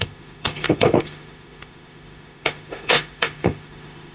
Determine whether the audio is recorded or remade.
remade